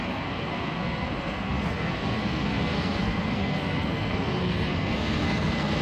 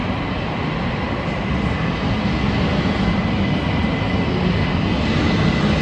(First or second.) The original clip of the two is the second